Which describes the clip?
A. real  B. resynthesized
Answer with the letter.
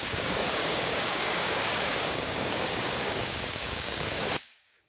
B